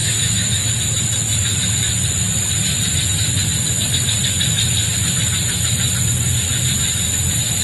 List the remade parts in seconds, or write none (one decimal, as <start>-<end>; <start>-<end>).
0.0-0.7